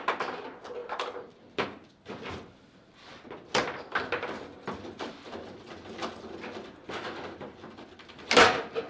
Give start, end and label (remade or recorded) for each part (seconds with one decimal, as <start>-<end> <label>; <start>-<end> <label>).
0.0-8.9 recorded